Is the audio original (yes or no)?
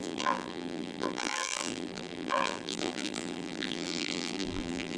no